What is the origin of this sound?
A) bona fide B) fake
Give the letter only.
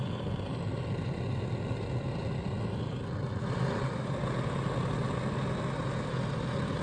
A